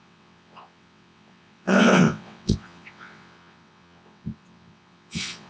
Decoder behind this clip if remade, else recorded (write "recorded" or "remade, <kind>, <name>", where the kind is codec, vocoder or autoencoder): remade, vocoder, WaveNeXt